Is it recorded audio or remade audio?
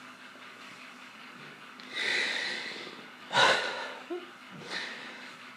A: remade